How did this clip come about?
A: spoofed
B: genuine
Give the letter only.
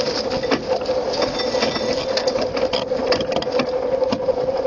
B